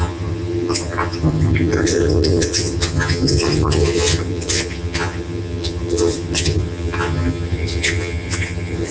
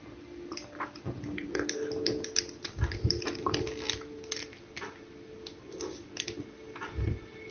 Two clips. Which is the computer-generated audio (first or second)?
first